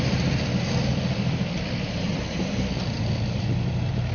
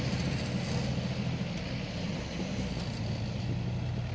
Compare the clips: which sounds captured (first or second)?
second